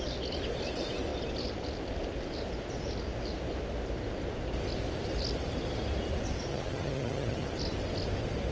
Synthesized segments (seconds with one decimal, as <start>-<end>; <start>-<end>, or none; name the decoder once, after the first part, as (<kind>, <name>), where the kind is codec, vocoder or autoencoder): 6.5-7.5 (vocoder, HiFi-GAN)